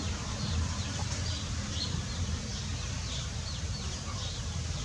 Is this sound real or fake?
fake